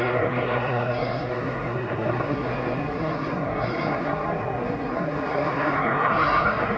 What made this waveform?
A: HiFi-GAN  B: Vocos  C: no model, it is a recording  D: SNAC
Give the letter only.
D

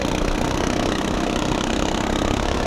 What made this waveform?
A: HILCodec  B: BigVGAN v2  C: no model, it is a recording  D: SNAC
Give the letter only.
D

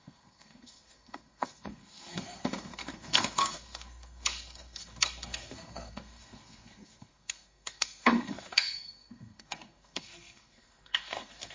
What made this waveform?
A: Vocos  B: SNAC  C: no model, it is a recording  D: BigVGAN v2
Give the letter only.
B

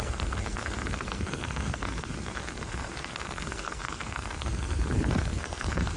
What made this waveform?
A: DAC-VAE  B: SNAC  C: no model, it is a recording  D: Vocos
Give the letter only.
B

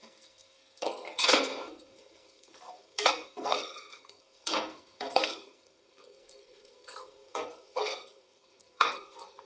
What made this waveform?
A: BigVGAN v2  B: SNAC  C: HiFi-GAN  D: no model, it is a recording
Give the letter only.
B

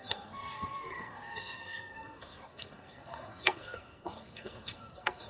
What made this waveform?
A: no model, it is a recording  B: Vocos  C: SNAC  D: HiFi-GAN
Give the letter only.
C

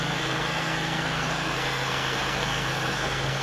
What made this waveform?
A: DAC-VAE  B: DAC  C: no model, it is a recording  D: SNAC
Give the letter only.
D